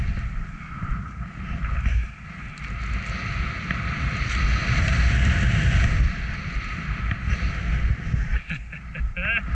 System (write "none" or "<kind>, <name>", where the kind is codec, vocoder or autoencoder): none